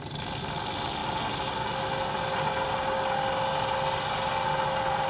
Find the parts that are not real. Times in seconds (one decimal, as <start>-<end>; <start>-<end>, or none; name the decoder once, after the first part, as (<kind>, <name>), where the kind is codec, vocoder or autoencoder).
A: none